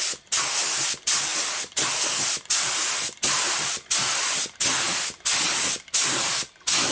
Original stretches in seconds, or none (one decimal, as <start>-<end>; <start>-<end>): 0.0-6.9